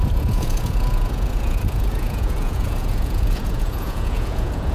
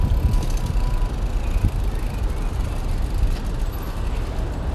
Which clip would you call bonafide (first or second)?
second